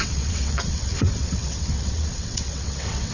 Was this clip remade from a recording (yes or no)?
yes